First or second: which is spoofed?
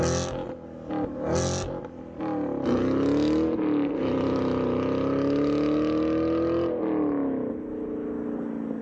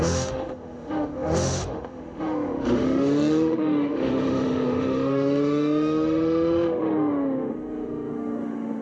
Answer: second